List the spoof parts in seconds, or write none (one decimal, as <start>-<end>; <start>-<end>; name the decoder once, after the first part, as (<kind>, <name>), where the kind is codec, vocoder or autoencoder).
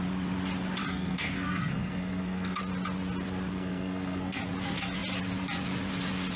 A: 0.9-2.6 (codec, SNAC); 3.5-4.4